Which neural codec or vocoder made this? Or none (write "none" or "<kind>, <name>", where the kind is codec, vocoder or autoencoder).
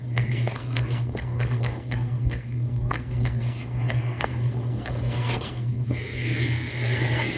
codec, SNAC